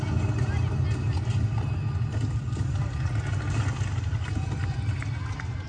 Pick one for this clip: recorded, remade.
recorded